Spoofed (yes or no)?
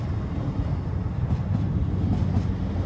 no